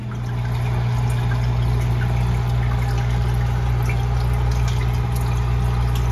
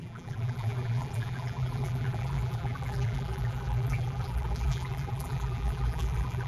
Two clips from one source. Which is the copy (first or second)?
second